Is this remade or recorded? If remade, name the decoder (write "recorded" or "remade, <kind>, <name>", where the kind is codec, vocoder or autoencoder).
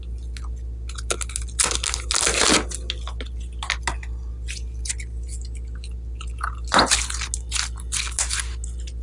recorded